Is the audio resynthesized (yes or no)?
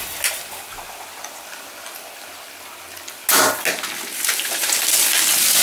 no